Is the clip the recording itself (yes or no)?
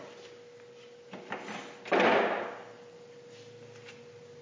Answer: yes